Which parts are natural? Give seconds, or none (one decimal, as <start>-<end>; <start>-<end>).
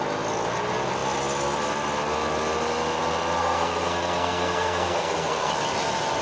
0.0-3.4; 5.5-6.2